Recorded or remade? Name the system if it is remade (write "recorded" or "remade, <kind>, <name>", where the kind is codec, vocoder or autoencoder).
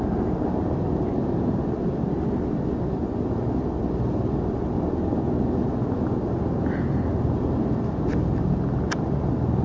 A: recorded